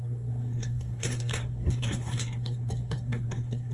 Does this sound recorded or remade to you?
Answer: remade